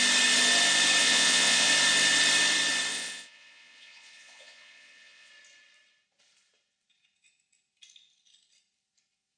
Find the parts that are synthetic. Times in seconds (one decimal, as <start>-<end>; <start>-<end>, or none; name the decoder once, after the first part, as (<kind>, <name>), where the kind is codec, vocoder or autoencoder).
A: 1.0-1.7 (vocoder, Vocos); 2.9-5.3